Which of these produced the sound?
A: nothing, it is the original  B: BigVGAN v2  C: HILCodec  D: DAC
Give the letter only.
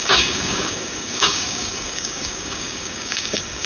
D